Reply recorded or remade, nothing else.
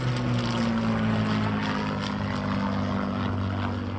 recorded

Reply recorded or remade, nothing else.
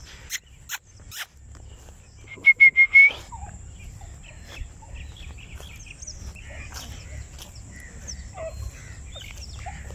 recorded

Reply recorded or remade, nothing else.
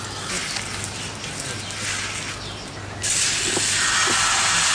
recorded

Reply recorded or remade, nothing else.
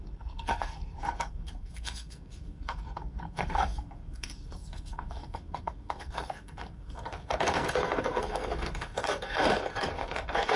remade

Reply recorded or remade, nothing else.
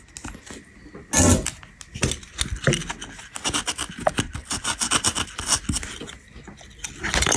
recorded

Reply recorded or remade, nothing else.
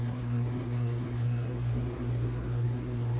remade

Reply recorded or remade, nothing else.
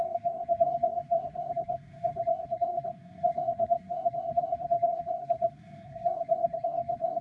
remade